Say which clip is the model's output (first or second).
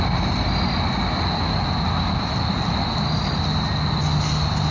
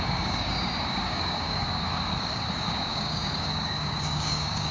second